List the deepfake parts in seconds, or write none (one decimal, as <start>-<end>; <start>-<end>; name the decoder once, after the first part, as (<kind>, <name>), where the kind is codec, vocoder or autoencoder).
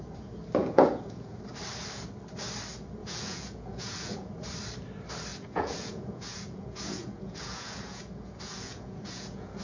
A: 0.6-1.4 (vocoder, Vocos); 3.0-4.3; 5.3-9.6